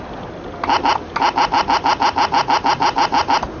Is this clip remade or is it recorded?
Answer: recorded